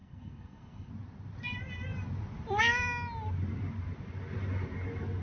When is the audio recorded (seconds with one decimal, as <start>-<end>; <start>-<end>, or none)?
0.9-5.2